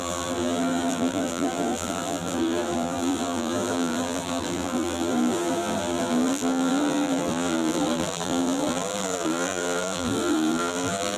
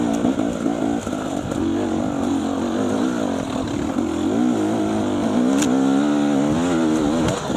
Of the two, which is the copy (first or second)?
first